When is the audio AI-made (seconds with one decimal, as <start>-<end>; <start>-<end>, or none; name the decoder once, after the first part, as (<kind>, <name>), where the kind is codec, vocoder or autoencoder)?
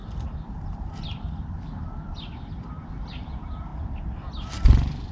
0.0-2.7 (vocoder, BigVGAN v2)